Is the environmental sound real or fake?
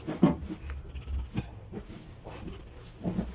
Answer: real